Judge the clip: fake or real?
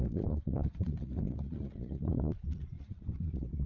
fake